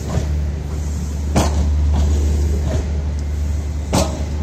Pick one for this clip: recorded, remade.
recorded